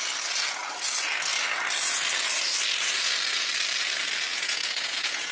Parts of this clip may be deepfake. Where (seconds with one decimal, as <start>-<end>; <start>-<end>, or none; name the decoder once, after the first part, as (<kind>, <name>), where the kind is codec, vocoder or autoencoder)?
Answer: 4.3-5.3 (vocoder, Vocos)